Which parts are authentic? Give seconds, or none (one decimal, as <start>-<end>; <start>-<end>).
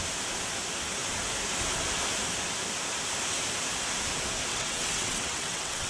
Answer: 0.0-4.5